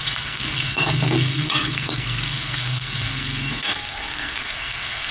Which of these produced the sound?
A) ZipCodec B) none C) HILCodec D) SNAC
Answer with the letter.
D